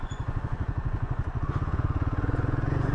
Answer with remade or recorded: remade